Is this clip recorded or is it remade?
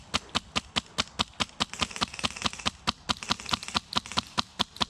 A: recorded